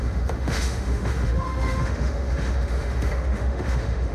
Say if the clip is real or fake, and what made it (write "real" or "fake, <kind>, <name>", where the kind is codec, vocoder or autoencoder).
fake, autoencoder, DAC-VAE